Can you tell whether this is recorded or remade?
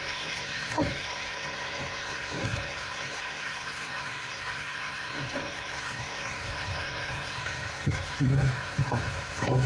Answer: remade